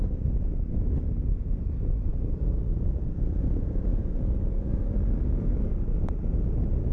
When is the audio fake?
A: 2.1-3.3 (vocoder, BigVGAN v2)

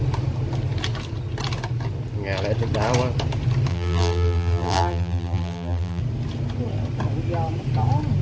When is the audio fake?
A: 3.7-6.0 (vocoder, BigVGAN v2)

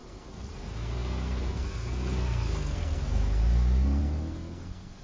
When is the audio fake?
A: 0.0-5.0 (codec, SNAC)

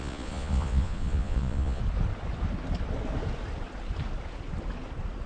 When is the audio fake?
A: 0.0-1.8 (vocoder, Vocos)